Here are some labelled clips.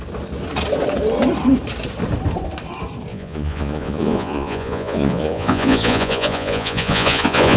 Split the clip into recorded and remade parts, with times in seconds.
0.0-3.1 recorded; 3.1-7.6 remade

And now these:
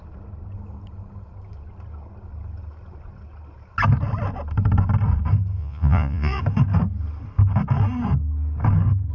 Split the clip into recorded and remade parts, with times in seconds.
0.0-5.6 recorded; 5.6-6.4 remade; 6.4-9.1 recorded

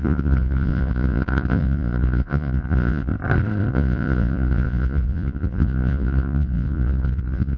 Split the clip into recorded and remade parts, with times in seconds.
0.0-3.1 remade; 3.1-3.7 recorded; 3.7-7.6 remade

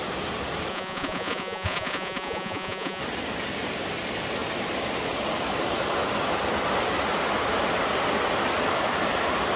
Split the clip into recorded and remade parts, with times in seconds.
0.0-0.7 recorded; 0.7-3.0 remade; 3.0-9.6 recorded

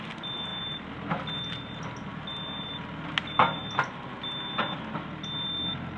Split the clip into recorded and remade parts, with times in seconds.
0.0-6.0 recorded

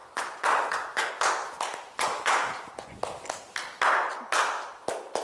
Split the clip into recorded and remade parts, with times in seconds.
0.0-1.1 remade; 1.1-1.7 recorded; 1.7-3.0 remade; 3.0-5.2 recorded

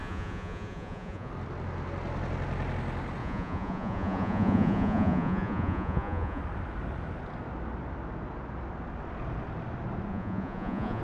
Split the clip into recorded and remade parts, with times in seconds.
0.0-1.3 remade; 1.3-3.2 recorded; 3.2-6.4 remade; 6.4-10.1 recorded; 10.1-11.0 remade

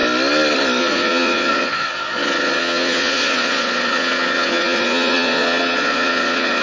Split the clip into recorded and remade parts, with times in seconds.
0.0-0.8 recorded; 0.8-6.6 remade